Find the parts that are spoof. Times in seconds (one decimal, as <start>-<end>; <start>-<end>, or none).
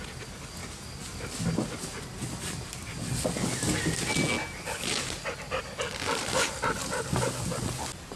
none